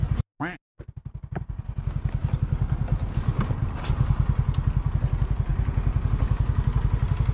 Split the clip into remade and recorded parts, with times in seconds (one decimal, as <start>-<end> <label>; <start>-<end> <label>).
0.0-7.3 recorded